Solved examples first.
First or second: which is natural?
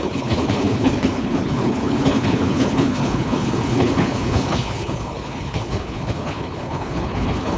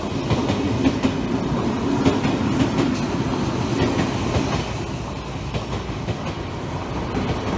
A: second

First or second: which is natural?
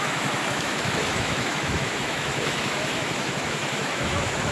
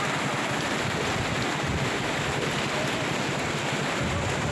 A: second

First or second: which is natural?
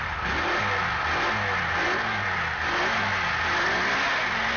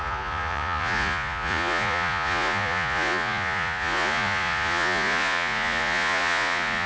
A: first